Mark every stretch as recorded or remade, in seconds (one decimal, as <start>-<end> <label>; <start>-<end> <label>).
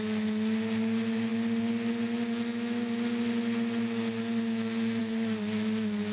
0.0-6.1 recorded